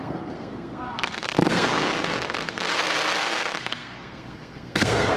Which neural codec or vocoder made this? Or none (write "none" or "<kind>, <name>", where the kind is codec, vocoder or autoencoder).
codec, SNAC